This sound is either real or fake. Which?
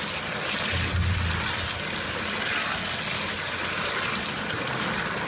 real